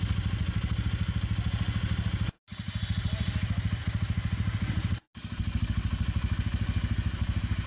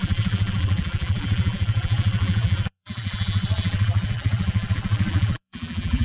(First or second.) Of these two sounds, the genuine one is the first